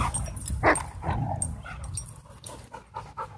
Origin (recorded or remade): recorded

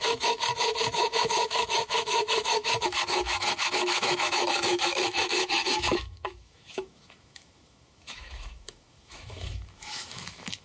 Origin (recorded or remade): remade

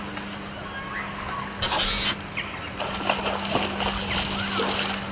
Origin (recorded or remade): recorded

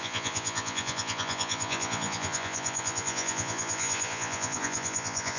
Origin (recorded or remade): remade